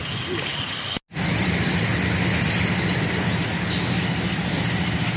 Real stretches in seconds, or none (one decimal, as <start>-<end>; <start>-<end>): 0.0-5.2